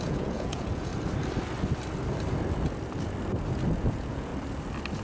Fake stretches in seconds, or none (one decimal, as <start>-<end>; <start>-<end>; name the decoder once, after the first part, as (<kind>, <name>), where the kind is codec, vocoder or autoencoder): 0.0-0.9 (vocoder, Vocos); 3.9-4.3